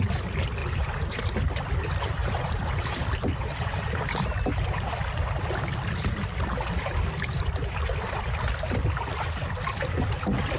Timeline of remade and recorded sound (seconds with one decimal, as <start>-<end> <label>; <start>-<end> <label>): 0.0-0.6 recorded; 0.6-1.2 remade; 1.2-2.2 recorded; 2.2-2.7 remade; 2.7-10.6 recorded